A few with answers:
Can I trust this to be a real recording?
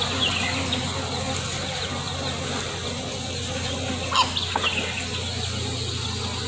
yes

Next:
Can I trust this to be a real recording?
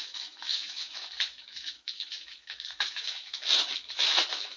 no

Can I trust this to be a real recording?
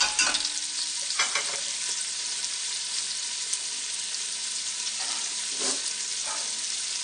yes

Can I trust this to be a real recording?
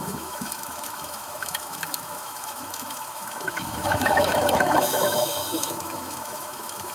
no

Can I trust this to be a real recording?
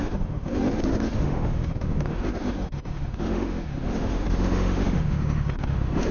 no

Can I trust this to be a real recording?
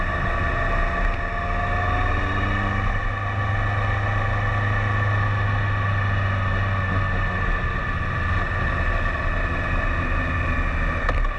yes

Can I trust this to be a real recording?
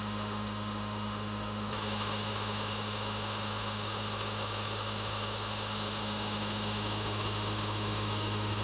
no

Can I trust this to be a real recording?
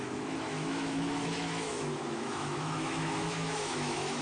no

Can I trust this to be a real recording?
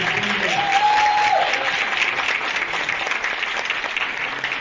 yes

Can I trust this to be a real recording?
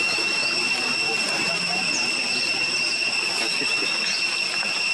yes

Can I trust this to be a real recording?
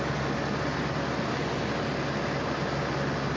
yes